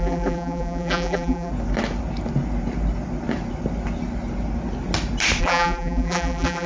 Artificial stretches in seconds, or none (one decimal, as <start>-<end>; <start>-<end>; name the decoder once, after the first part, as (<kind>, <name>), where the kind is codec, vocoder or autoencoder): 0.0-1.5 (vocoder, BigVGAN v2); 5.4-6.7

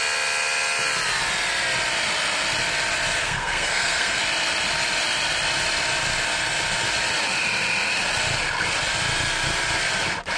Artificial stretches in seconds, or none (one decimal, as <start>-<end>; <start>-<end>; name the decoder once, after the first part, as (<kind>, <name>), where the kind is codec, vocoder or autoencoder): 3.2-4.2 (codec, SNAC)

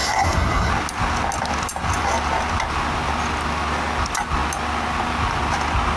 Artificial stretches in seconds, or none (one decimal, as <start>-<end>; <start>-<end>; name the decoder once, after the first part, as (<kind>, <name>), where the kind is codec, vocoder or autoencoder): 0.0-0.7 (codec, SNAC)

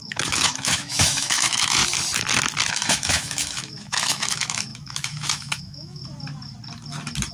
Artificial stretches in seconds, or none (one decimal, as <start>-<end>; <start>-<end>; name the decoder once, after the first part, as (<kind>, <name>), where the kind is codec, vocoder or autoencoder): 0.0-1.8 (autoencoder, DAC-VAE); 2.7-6.0

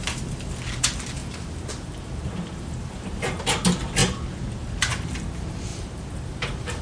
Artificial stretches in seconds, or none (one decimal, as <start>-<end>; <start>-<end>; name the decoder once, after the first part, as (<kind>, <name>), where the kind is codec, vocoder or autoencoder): 1.2-3.4 (vocoder, BigVGAN v2); 5.7-6.8

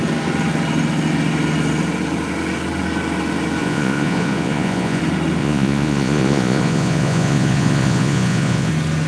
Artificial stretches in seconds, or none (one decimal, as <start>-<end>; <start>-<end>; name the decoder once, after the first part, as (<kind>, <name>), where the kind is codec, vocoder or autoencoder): 3.6-5.0 (vocoder, Vocos); 5.4-8.7

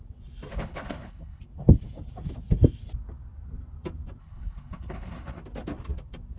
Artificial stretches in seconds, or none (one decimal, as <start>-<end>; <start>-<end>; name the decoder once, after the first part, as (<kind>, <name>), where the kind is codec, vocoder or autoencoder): 0.5-1.4 (codec, HILCodec); 4.2-5.4

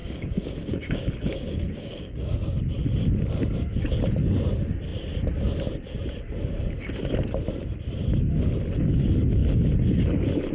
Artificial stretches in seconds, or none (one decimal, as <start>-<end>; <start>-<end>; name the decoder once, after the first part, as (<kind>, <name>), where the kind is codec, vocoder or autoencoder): 0.0-2.6 (codec, DAC)